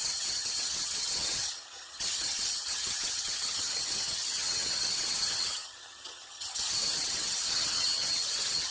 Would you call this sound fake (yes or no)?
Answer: yes